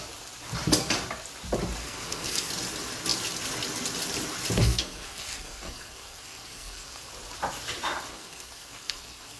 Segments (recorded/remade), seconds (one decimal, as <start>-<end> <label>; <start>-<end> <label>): 0.0-1.8 recorded; 1.8-2.5 remade; 2.5-4.6 recorded; 4.6-7.1 remade; 7.1-8.1 recorded; 8.1-9.4 remade